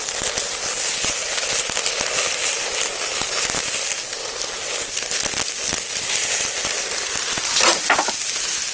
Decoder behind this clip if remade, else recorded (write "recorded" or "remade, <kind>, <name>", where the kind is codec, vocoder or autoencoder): recorded